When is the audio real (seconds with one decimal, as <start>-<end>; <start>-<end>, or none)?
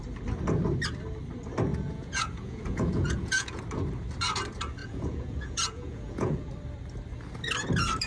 0.0-1.7; 3.6-4.8; 6.5-8.1